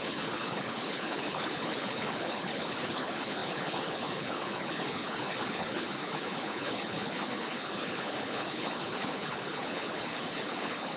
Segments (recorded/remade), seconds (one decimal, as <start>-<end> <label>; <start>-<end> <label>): 0.0-11.0 remade

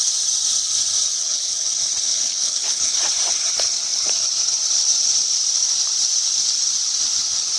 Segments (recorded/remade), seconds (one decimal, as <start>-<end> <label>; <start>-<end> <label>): 0.0-1.2 recorded; 1.2-1.7 remade; 1.7-2.1 recorded; 2.1-3.0 remade; 3.0-7.6 recorded